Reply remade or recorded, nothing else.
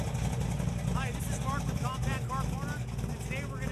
recorded